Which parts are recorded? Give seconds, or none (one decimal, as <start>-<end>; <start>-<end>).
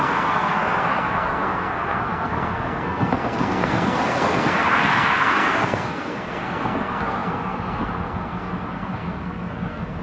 none